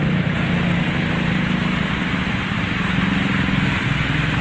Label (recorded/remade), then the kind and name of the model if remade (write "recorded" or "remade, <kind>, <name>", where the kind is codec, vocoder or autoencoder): recorded